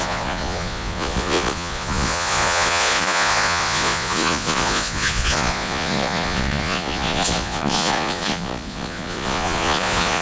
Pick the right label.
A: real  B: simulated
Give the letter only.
B